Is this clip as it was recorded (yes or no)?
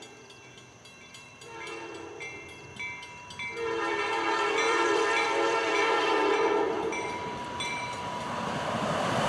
no